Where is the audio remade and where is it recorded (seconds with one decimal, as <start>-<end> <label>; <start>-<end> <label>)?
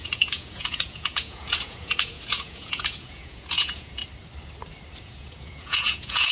0.0-4.0 remade; 4.0-5.0 recorded; 5.0-6.3 remade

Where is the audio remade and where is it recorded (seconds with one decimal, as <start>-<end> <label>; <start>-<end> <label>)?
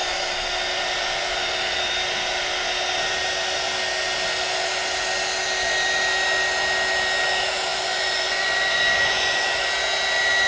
0.0-7.7 recorded; 7.7-9.7 remade; 9.7-10.5 recorded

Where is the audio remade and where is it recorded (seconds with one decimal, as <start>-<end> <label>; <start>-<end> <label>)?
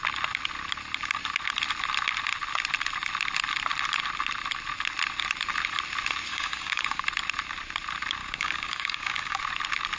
0.0-6.3 recorded; 6.3-7.0 remade; 7.0-8.2 recorded; 8.2-9.4 remade; 9.4-10.0 recorded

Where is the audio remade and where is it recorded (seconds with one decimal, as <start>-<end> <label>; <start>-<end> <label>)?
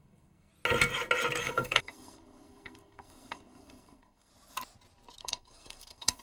0.0-0.5 remade; 0.5-1.4 recorded; 1.4-4.3 remade; 4.3-5.2 recorded; 5.2-6.2 remade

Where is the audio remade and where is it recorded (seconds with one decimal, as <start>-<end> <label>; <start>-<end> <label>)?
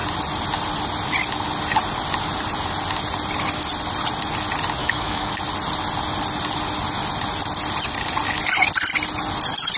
0.0-4.8 recorded; 4.8-5.3 remade; 5.3-9.8 recorded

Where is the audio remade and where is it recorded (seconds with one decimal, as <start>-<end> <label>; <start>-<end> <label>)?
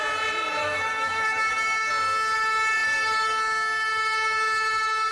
0.0-0.6 recorded; 0.6-1.9 remade; 1.9-5.1 recorded